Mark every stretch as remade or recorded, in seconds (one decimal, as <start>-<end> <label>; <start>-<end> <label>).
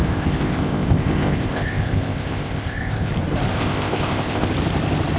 0.0-3.1 remade; 3.1-3.5 recorded; 3.5-4.5 remade; 4.5-5.2 recorded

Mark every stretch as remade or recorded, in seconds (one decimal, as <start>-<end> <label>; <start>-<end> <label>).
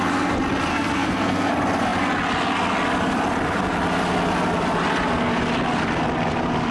0.0-0.7 recorded; 0.7-1.5 remade; 1.5-6.7 recorded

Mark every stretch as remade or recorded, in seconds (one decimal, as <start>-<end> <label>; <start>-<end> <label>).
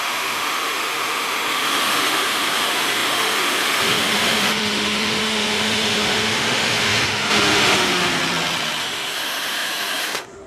0.0-8.2 remade; 8.2-8.8 recorded; 8.8-10.5 remade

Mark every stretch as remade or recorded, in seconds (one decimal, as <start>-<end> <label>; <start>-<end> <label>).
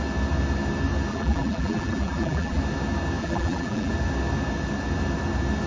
0.0-1.1 recorded; 1.1-2.6 remade; 2.6-3.2 recorded; 3.2-3.9 remade; 3.9-5.7 recorded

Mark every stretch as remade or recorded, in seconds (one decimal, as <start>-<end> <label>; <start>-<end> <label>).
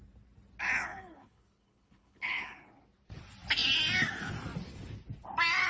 0.0-0.9 recorded; 0.9-2.7 remade; 2.7-5.7 recorded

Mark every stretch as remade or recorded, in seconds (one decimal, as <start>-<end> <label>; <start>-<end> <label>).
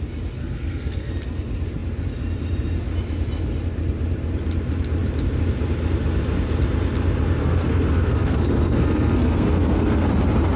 0.0-0.4 recorded; 0.4-1.1 remade; 1.1-7.4 recorded; 7.4-10.1 remade; 10.1-10.6 recorded